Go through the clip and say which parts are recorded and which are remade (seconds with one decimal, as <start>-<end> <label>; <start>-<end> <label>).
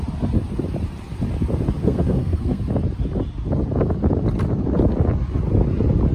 0.0-1.8 recorded; 1.8-2.6 remade; 2.6-6.1 recorded